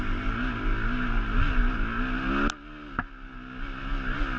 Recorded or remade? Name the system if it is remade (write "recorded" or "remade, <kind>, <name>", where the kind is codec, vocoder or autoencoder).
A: recorded